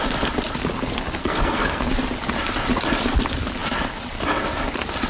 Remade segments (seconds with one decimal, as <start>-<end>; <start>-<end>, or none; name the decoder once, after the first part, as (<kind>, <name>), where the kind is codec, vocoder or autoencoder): 1.2-1.9 (codec, SNAC)

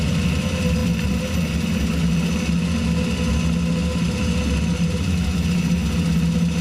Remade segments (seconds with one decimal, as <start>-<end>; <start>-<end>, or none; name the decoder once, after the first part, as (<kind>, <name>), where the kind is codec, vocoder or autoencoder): none